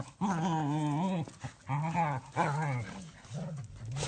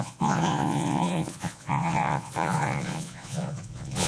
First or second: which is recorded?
first